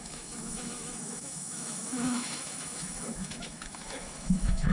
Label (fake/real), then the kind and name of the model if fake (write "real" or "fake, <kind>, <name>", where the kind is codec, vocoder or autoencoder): fake, autoencoder, DAC-VAE